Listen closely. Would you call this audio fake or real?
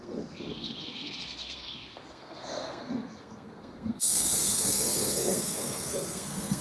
fake